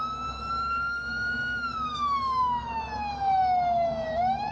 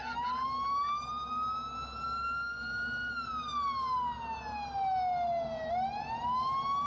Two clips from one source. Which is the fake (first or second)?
first